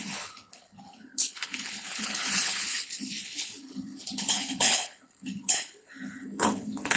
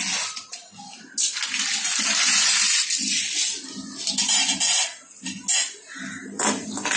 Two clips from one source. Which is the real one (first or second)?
second